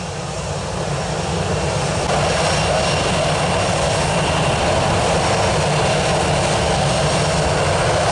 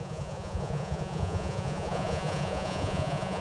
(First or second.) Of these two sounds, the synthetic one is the second